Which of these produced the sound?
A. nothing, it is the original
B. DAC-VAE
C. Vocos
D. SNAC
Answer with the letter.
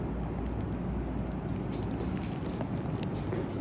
A